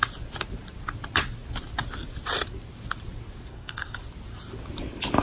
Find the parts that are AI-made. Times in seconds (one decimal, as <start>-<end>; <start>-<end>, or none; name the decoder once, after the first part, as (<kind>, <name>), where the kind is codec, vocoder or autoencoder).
3.5-4.0 (codec, DAC)